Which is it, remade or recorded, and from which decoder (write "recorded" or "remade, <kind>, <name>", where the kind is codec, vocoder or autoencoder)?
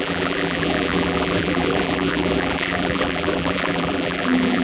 remade, vocoder, BigVGAN v2